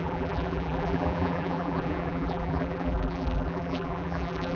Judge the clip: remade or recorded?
remade